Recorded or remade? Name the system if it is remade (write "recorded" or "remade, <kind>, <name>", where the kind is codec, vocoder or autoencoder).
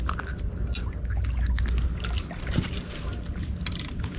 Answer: recorded